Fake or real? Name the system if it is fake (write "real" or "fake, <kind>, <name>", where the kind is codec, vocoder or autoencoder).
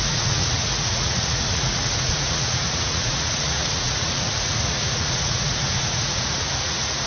fake, vocoder, Vocos